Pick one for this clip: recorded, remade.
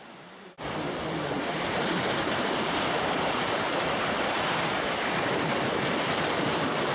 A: remade